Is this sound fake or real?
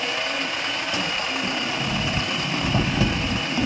real